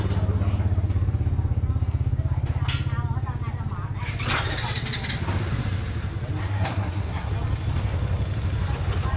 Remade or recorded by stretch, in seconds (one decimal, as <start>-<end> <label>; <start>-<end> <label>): 0.0-6.4 recorded; 6.4-7.3 remade; 7.3-9.2 recorded